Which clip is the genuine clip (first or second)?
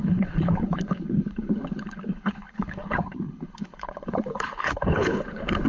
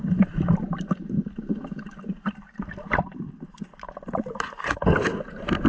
second